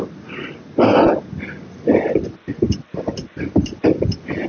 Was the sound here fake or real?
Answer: real